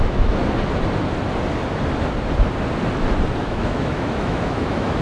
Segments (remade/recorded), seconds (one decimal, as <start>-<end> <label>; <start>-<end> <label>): 0.0-0.4 remade; 0.4-3.4 recorded; 3.4-5.0 remade